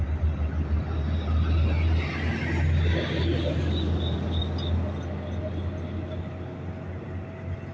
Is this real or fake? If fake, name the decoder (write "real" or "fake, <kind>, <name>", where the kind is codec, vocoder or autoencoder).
real